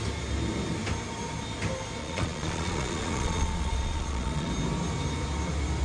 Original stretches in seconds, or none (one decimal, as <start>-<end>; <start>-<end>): 0.0-2.0; 4.5-5.8